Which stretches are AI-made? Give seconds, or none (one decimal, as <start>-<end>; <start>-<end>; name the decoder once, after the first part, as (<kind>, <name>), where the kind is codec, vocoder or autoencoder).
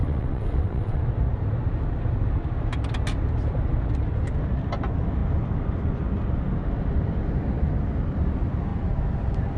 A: 0.0-1.0 (vocoder, WaveNeXt)